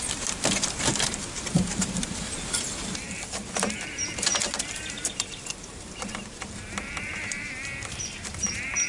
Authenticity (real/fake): fake